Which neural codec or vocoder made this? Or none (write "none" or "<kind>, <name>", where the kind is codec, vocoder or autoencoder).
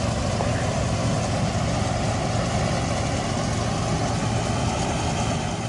none